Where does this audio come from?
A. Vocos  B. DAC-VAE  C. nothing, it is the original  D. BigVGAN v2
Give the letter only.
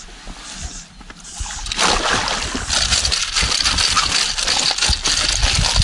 C